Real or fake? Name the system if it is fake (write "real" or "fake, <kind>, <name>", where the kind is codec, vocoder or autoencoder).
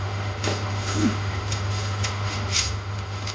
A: fake, autoencoder, DAC-VAE